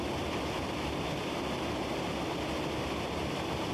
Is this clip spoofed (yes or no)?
no